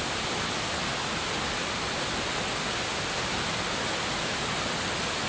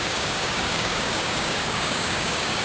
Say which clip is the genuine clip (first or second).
first